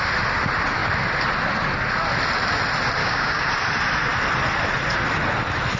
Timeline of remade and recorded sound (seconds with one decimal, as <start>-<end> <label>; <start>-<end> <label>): 0.0-3.0 recorded; 3.0-3.5 remade; 3.5-5.8 recorded